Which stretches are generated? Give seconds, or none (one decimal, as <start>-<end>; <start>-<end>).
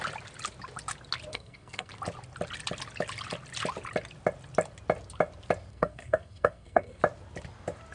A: 1.3-1.9; 5.7-7.0